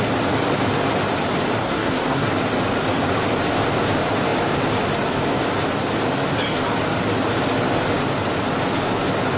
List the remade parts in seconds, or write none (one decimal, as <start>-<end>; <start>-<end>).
1.6-2.3